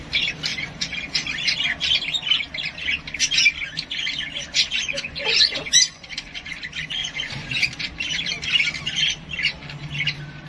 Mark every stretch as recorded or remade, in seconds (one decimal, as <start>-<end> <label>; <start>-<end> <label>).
0.0-0.5 recorded; 0.5-1.1 remade; 1.1-4.3 recorded; 4.3-6.6 remade; 6.6-7.0 recorded; 7.0-7.5 remade; 7.5-10.5 recorded